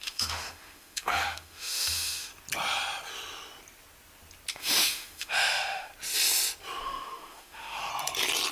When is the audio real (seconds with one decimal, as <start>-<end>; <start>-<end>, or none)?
2.3-4.5; 5.9-6.8; 7.9-8.5

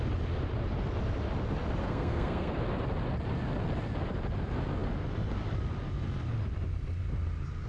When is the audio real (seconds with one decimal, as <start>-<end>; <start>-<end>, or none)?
0.0-1.8; 2.6-7.7